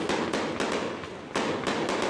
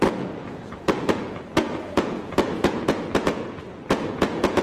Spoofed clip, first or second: second